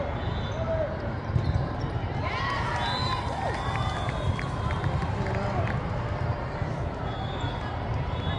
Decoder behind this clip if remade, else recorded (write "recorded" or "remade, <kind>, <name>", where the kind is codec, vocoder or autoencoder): recorded